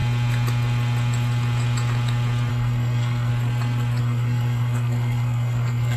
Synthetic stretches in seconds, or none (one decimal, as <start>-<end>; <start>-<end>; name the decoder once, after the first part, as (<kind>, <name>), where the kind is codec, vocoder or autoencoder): 2.5-3.3 (codec, SNAC); 4.0-6.0